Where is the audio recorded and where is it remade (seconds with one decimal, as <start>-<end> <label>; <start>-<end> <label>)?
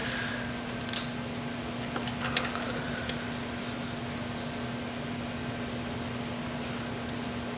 0.0-7.6 recorded